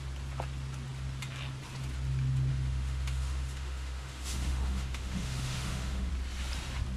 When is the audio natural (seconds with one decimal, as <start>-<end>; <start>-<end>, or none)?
0.0-2.5; 6.1-7.0